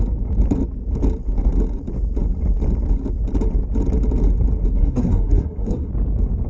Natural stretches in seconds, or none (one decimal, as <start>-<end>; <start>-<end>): 0.0-4.8; 5.9-6.5